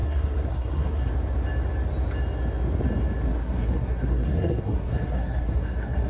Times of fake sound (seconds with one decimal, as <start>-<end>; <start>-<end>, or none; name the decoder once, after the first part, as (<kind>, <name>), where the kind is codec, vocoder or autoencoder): 0.0-1.1 (codec, SNAC); 3.3-6.1